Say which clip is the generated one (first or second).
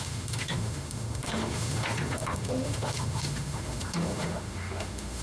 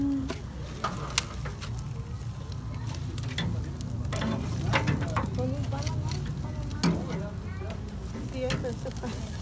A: first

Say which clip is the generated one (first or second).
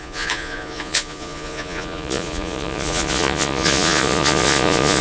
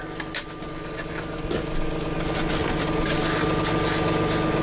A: first